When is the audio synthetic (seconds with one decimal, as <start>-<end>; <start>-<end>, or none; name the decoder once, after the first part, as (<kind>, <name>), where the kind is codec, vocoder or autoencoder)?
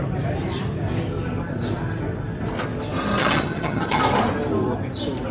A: 3.2-4.0 (vocoder, HiFi-GAN)